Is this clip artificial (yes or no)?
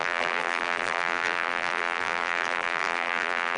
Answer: yes